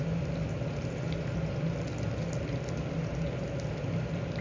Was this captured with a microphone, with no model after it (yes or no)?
yes